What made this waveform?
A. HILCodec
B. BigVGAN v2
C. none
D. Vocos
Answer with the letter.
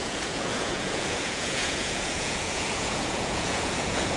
D